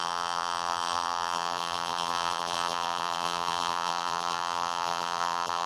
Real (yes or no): no